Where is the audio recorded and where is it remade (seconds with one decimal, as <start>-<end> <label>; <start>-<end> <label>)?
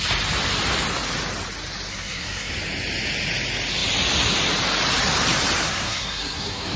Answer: 0.0-1.9 recorded; 1.9-2.5 remade; 2.5-5.6 recorded; 5.6-6.8 remade